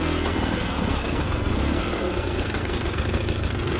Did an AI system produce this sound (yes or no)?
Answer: yes